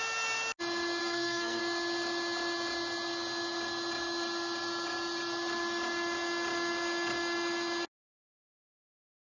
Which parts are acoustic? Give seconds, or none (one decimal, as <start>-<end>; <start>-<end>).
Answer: 0.0-1.0; 1.6-9.4